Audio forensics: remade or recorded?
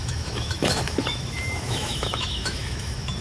remade